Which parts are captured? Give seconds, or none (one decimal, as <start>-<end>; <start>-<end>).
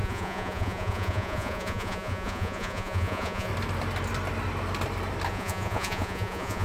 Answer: 3.5-5.3